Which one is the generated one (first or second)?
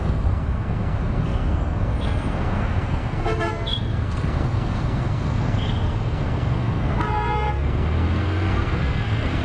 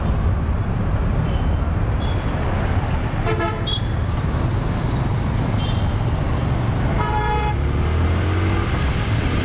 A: first